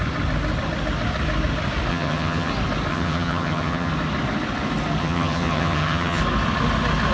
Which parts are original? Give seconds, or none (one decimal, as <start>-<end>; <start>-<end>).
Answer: 0.0-1.9; 2.5-2.9; 3.9-5.0; 6.2-7.1